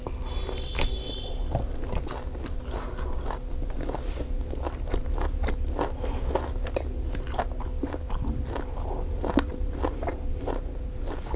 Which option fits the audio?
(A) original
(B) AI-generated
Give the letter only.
A